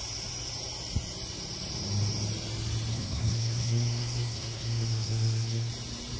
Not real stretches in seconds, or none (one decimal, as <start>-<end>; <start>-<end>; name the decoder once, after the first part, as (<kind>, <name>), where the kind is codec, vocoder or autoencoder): 2.9-5.7 (codec, SNAC)